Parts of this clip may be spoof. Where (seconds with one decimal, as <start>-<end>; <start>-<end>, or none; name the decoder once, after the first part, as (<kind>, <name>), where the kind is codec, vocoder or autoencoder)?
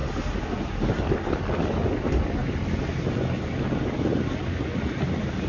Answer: none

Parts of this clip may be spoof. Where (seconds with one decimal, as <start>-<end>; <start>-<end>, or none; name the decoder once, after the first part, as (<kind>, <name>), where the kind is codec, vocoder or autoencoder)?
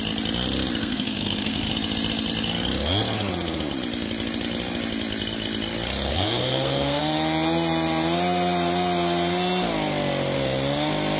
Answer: 0.8-1.7 (codec, SNAC); 6.1-7.0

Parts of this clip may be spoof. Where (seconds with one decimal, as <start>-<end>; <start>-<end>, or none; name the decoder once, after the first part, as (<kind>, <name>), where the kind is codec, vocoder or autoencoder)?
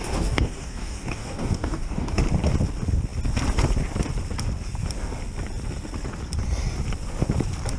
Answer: 0.0-2.2 (codec, DAC)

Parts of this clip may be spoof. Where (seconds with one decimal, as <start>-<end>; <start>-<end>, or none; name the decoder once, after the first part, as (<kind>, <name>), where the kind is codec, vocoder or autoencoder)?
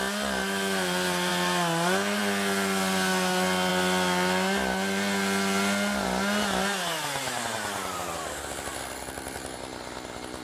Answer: none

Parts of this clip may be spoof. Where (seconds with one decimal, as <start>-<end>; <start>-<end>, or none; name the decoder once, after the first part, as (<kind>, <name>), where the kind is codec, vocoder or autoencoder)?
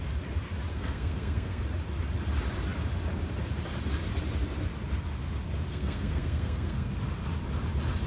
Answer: 0.7-1.6 (codec, SNAC); 5.7-6.9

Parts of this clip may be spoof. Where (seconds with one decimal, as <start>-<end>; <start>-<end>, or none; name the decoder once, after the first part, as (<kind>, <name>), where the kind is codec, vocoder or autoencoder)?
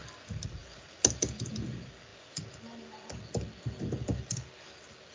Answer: none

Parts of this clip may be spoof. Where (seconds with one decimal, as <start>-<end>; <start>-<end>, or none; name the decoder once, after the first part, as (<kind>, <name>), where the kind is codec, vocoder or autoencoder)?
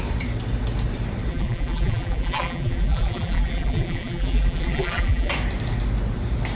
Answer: 1.3-5.3 (vocoder, BigVGAN v2)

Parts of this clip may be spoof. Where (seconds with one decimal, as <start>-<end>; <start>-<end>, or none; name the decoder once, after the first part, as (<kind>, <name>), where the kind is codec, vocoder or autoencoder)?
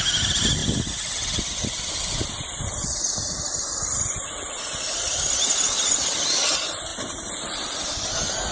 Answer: none